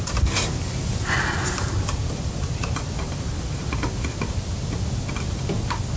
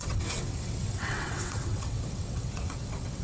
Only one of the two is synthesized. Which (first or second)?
second